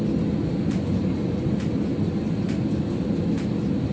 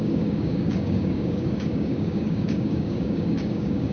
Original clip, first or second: first